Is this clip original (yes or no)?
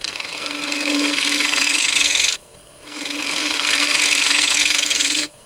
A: no